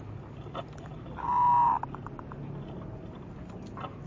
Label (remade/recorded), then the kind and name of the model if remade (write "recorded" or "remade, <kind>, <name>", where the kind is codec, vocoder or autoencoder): recorded